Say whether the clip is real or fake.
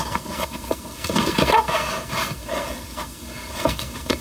fake